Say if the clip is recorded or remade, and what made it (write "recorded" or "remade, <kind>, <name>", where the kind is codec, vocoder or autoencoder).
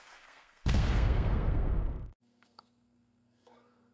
remade, codec, SNAC